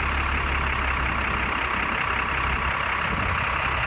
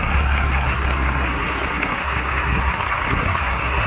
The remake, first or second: second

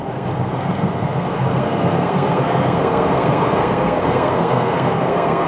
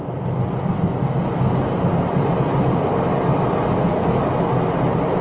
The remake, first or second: first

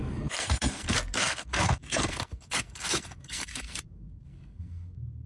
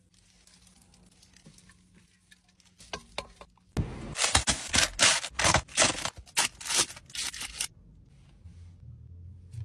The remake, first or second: first